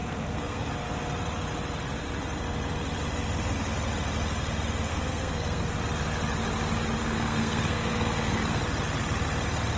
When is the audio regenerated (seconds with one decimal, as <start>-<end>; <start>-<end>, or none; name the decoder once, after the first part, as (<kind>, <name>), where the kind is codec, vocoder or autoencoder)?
0.0-0.7 (codec, SNAC); 4.9-5.6; 7.0-8.6